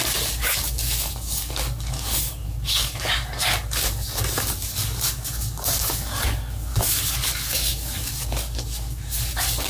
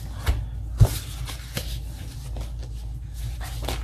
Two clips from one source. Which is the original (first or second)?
second